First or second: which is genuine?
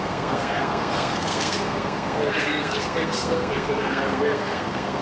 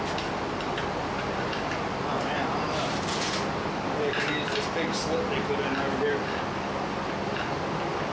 second